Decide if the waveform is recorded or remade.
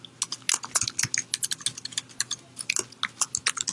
recorded